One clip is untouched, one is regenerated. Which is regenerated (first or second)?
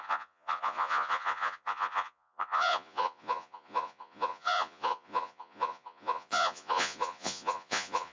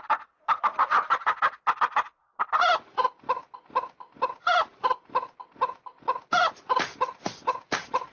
first